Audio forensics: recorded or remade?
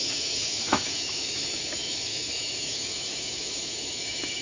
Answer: remade